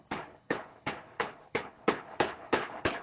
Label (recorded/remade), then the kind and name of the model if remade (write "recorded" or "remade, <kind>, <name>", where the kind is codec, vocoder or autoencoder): remade, codec, HILCodec